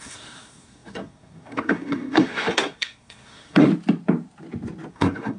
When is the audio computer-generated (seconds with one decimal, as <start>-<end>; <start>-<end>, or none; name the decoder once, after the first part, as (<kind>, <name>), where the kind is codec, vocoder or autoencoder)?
0.0-3.7 (codec, SNAC); 4.9-5.4